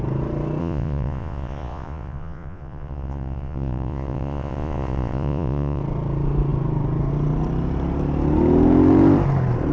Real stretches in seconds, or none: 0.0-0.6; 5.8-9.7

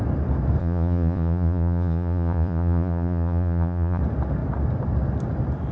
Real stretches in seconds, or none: 0.0-0.6; 4.0-5.7

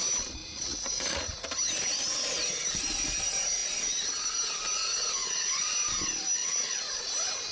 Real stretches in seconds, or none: 0.0-0.4; 1.5-6.4; 7.1-7.5

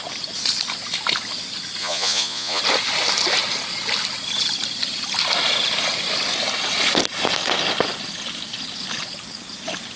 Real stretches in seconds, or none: 0.0-1.8; 2.6-10.0

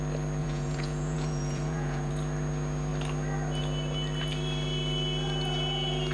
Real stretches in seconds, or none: 0.0-0.4; 2.1-6.1